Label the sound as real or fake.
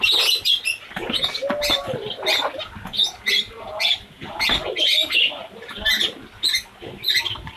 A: real